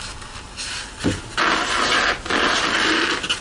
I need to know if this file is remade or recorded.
recorded